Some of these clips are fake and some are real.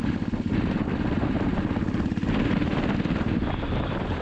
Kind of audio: fake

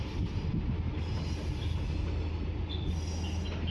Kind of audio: real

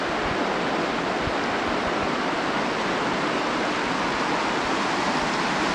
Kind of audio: real